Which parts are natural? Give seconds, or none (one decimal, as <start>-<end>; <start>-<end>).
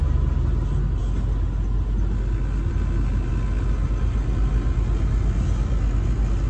0.0-6.5